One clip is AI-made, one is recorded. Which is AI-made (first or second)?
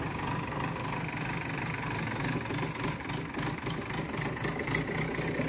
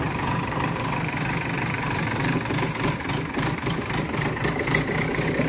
second